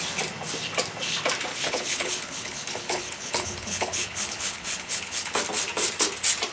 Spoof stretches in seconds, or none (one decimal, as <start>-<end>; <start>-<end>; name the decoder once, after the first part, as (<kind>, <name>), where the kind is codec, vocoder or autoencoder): 1.5-5.4 (codec, HILCodec)